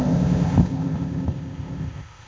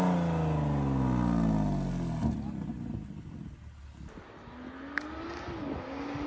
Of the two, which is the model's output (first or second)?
first